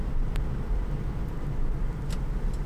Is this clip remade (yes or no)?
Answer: no